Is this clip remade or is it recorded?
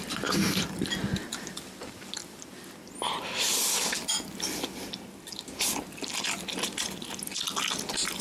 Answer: recorded